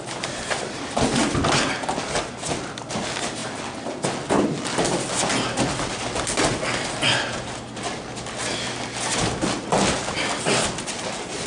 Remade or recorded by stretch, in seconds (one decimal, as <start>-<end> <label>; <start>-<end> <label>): 0.0-11.5 recorded